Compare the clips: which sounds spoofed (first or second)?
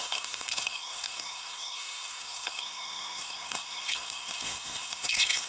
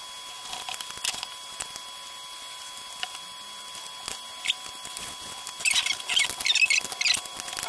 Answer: first